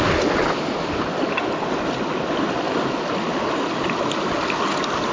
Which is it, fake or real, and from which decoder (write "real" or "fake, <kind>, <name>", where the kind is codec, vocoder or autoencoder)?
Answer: real